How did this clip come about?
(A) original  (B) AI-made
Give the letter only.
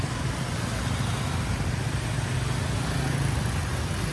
A